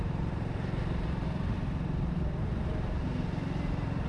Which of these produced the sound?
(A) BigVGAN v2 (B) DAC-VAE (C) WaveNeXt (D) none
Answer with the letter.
D